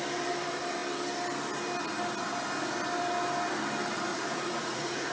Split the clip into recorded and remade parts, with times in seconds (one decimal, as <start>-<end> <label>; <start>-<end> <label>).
0.0-4.1 recorded; 4.1-5.1 remade